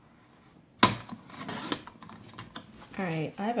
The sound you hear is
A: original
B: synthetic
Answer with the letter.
A